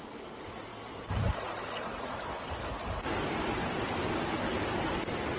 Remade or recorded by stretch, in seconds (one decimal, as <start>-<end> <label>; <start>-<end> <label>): 0.0-5.4 recorded